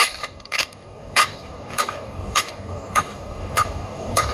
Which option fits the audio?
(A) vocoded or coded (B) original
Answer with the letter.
A